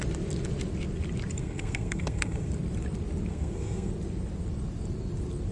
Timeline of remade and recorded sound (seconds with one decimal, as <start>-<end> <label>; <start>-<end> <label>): 0.0-1.4 recorded; 1.4-2.5 remade; 2.5-3.3 recorded; 3.3-3.9 remade; 3.9-5.5 recorded